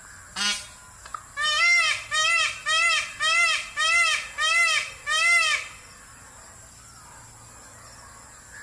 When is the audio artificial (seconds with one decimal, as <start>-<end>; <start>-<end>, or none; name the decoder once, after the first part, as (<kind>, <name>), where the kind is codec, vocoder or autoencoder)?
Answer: none